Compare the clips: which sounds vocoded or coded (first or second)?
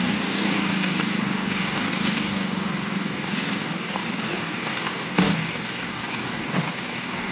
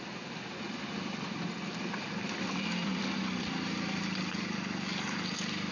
first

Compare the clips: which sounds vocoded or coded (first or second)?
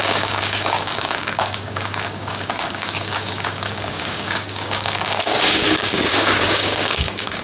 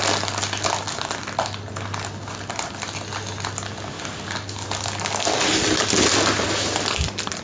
first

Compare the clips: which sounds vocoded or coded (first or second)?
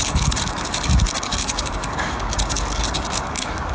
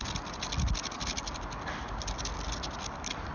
first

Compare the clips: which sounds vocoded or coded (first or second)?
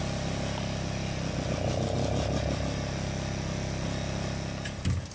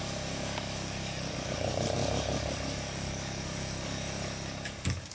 second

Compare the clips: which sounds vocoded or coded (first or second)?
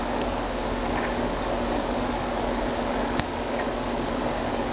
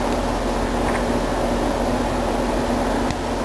first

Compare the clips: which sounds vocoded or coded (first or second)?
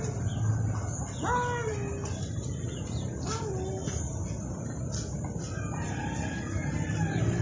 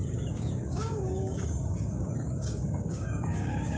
second